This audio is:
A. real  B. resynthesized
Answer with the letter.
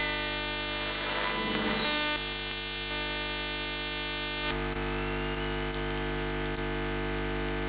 A